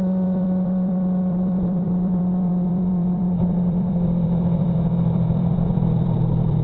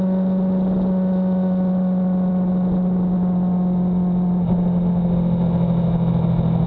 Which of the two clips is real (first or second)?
second